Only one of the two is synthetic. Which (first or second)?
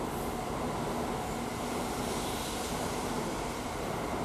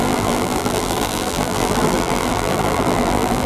second